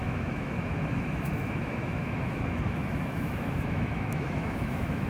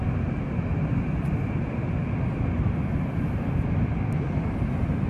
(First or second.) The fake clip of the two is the first